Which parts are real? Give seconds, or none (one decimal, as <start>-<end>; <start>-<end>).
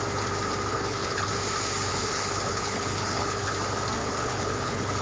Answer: 0.0-0.7; 1.3-1.9; 3.5-4.0